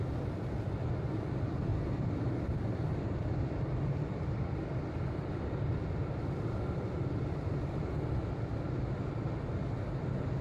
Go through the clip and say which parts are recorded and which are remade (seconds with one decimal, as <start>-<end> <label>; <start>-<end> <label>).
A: 0.0-1.7 recorded; 1.7-5.8 remade; 5.8-10.4 recorded